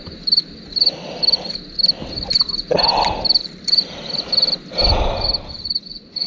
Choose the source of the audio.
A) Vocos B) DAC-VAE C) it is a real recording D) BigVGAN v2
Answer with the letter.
C